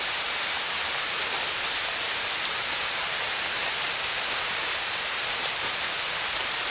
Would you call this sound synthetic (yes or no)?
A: yes